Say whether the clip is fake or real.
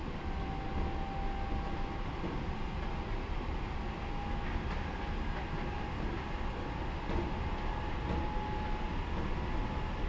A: real